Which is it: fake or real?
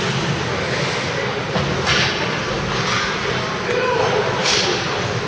real